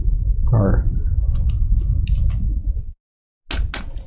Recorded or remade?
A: recorded